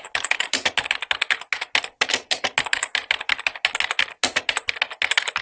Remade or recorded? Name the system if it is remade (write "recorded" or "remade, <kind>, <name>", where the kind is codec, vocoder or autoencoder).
recorded